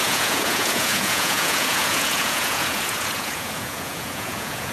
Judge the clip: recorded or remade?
remade